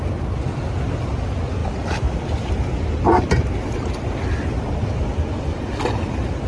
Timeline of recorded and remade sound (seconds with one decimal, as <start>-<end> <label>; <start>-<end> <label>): 0.0-6.5 recorded